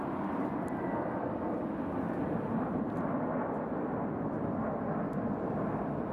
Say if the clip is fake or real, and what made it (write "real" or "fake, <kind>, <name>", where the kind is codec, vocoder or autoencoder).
real